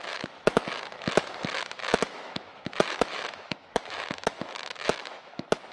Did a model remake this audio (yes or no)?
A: yes